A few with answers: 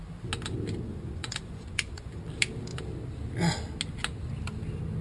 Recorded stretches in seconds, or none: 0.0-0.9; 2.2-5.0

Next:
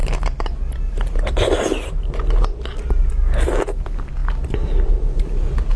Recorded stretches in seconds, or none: 0.0-5.8